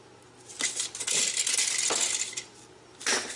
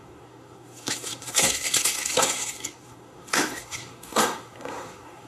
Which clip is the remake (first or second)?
second